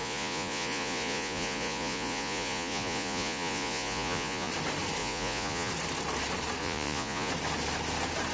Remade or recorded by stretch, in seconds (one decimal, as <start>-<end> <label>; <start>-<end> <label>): 0.0-4.5 remade; 4.5-5.0 recorded; 5.0-5.7 remade; 5.7-6.6 recorded; 6.6-7.3 remade; 7.3-8.3 recorded